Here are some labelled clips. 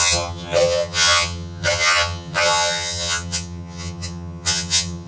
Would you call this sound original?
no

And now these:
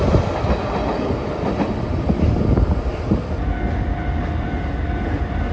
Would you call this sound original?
no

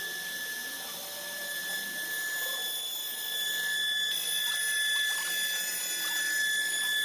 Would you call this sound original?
yes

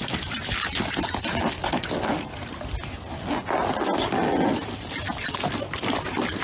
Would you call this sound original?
yes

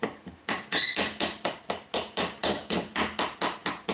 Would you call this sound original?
yes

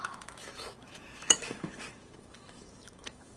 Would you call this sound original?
no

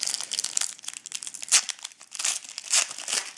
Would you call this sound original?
yes